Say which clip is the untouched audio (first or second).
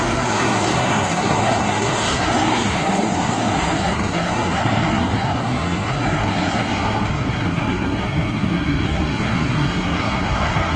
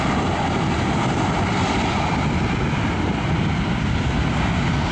second